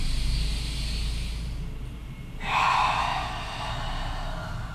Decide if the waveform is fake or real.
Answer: real